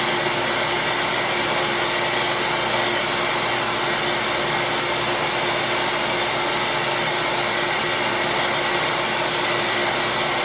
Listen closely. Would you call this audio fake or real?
real